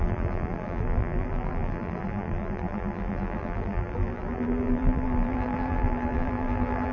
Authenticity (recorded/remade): remade